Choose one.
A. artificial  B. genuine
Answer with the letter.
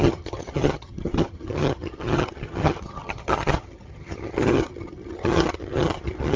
A